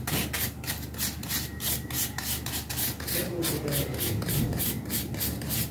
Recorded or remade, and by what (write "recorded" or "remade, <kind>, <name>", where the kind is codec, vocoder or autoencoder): recorded